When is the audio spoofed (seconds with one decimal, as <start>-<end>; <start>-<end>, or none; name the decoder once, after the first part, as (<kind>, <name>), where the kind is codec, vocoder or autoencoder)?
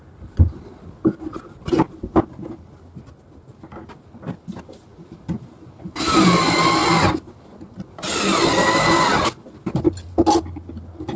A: none